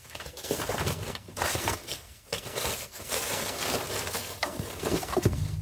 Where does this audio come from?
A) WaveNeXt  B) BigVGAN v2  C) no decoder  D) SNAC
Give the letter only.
D